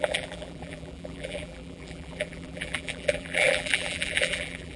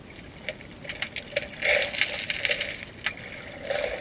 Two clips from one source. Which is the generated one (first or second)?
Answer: first